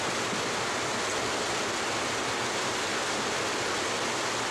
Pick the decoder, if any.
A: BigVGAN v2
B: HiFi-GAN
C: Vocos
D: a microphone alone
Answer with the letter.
D